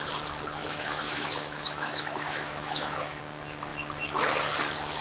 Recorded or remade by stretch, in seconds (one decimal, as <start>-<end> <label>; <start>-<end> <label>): 0.0-0.6 recorded; 0.6-3.2 remade; 3.2-5.0 recorded